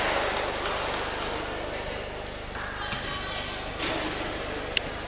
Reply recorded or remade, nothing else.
recorded